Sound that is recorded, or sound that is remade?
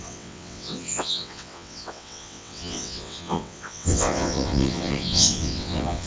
remade